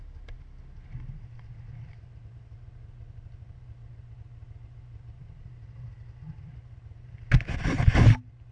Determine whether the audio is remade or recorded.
recorded